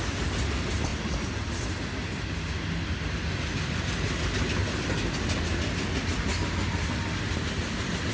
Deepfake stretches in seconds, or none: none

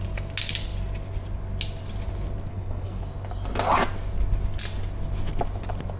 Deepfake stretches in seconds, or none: 2.5-3.0 (codec, SNAC)

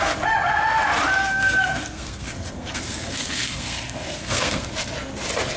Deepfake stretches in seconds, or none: 1.3-4.7 (codec, SNAC)

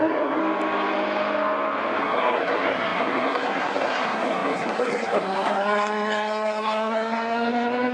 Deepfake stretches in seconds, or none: 0.0-0.4 (codec, SNAC); 2.0-7.9

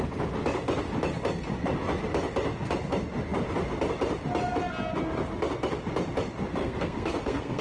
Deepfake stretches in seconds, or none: 6.6-7.6 (codec, SNAC)

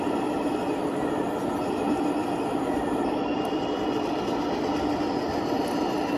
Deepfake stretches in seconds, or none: none